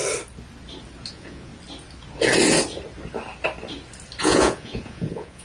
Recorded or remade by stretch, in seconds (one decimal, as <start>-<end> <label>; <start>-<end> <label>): 0.0-1.1 recorded; 1.1-1.5 remade; 1.5-4.2 recorded; 4.2-5.4 remade